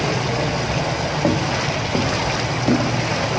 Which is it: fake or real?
real